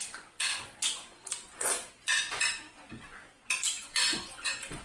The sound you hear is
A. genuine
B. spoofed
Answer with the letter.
B